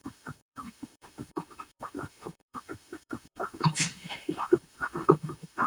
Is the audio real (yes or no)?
no